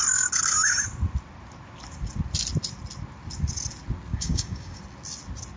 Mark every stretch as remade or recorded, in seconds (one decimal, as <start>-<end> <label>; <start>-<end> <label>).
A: 0.0-4.1 recorded; 4.1-4.8 remade; 4.8-5.6 recorded